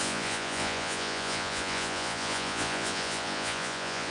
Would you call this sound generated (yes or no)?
yes